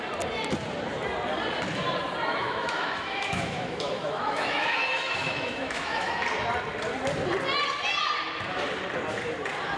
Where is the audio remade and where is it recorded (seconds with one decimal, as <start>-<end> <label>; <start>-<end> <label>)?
0.0-2.3 recorded; 2.3-6.1 remade; 6.1-9.8 recorded